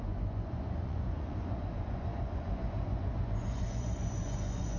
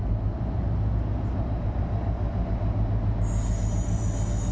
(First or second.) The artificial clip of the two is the first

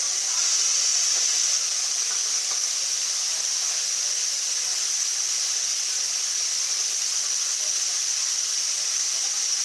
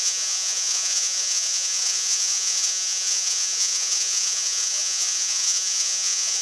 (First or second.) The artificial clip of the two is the second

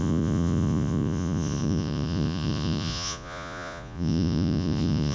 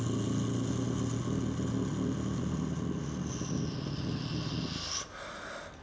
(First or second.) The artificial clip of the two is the first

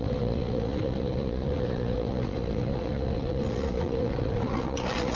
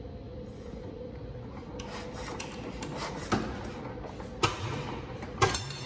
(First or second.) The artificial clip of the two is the first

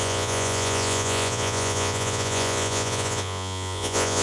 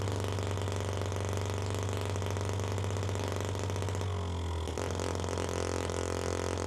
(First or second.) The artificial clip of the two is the first